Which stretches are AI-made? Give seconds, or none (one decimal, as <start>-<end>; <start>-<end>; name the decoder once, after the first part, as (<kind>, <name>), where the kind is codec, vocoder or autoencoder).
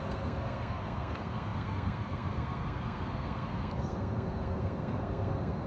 0.0-5.7 (codec, SNAC)